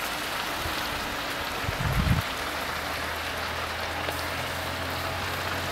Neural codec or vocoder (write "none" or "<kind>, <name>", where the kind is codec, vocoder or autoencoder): none